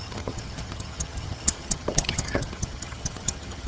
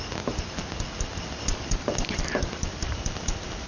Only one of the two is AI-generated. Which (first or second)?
first